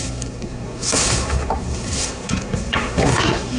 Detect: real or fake fake